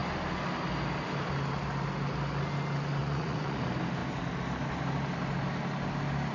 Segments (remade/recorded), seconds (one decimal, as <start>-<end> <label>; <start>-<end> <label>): 0.0-3.0 recorded; 3.0-3.6 remade; 3.6-6.3 recorded